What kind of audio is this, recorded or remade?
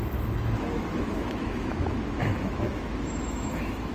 remade